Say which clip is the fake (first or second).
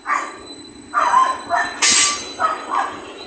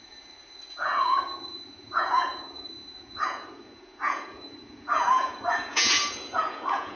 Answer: second